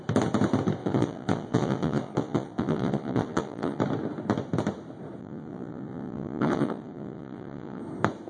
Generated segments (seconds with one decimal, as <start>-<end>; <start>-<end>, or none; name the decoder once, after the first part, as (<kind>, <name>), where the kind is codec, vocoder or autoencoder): 0.8-3.8 (vocoder, Vocos); 5.2-7.8